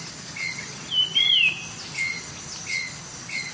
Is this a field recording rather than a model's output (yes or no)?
yes